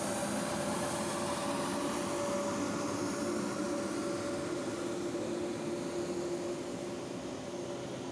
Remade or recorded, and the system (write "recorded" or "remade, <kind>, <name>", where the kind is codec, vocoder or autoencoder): recorded